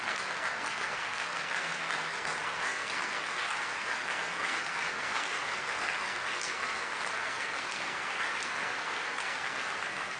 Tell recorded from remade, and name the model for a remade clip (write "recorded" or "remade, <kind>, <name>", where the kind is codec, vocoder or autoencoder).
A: remade, codec, SNAC